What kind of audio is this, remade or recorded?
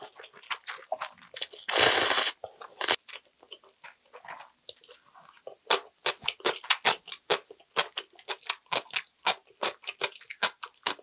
recorded